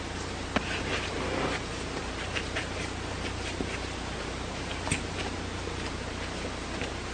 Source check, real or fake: real